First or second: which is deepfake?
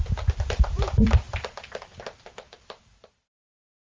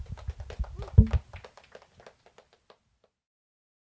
first